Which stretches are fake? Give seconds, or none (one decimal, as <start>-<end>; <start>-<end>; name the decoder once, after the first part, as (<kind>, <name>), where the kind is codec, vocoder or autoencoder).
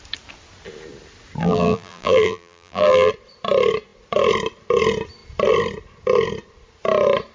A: 1.4-3.1 (vocoder, BigVGAN v2)